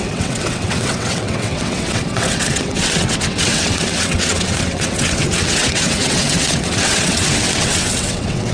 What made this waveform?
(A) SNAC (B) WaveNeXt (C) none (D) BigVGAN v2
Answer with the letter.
B